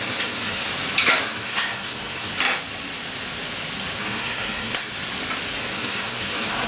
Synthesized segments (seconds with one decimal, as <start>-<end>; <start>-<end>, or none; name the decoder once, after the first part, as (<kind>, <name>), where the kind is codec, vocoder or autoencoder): 0.0-0.7 (codec, SNAC); 1.2-2.3; 4.0-4.9; 5.6-6.7

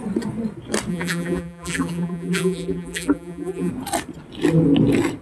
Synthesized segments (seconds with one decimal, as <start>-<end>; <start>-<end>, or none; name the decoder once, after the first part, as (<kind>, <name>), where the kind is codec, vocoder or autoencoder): 0.9-3.7 (vocoder, BigVGAN v2)